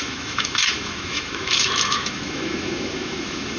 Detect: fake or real fake